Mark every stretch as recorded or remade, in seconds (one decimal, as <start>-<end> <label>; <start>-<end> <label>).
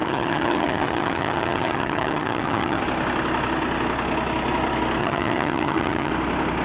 0.0-2.8 remade; 2.8-5.0 recorded; 5.0-6.1 remade; 6.1-6.6 recorded